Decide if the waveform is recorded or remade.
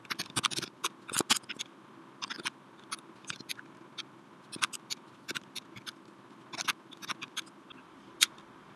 recorded